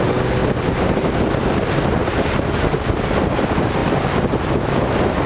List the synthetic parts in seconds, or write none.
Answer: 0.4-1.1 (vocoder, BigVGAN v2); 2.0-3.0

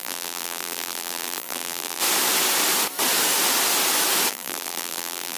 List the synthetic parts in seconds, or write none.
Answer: 0.0-2.0 (vocoder, BigVGAN v2); 4.3-5.4

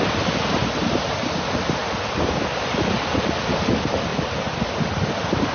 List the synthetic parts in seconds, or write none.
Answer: 1.8-3.0 (vocoder, BigVGAN v2); 4.1-4.6

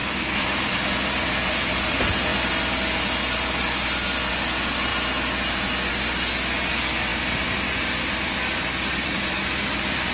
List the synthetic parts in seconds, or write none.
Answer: 1.9-2.3 (vocoder, BigVGAN v2); 4.3-4.9; 5.9-10.1

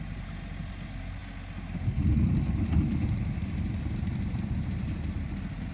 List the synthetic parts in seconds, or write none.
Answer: 0.0-1.2 (vocoder, BigVGAN v2); 4.2-5.7

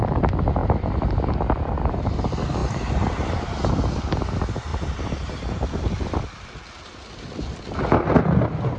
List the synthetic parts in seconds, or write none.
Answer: 2.6-3.7 (vocoder, BigVGAN v2); 4.7-7.6